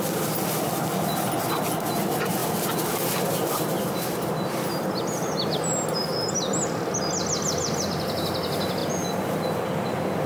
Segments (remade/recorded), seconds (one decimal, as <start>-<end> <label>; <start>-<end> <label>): 0.0-10.3 recorded